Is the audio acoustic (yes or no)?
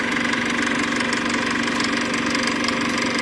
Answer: yes